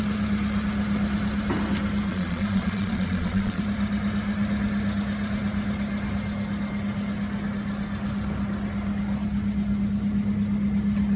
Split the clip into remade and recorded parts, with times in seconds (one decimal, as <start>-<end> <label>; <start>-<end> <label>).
0.0-2.1 recorded; 2.1-3.6 remade; 3.6-11.2 recorded